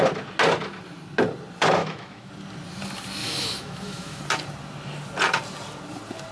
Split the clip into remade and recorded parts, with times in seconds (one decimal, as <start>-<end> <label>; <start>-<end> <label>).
0.0-1.8 recorded; 1.8-2.3 remade; 2.3-3.2 recorded; 3.2-4.2 remade; 4.2-6.3 recorded